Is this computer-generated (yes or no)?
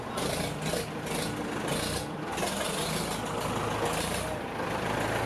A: no